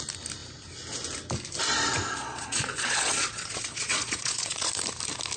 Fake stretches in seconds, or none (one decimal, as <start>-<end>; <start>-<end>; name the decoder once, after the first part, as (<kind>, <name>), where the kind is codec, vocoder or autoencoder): 2.2-4.7 (vocoder, Vocos)